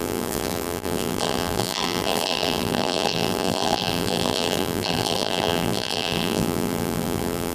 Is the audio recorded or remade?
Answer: remade